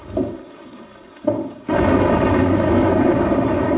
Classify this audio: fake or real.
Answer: fake